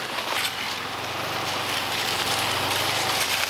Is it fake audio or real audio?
real